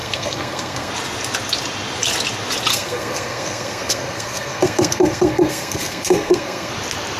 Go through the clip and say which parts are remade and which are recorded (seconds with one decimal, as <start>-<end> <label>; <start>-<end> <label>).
0.0-0.9 remade; 0.9-2.7 recorded; 2.7-6.7 remade; 6.7-7.2 recorded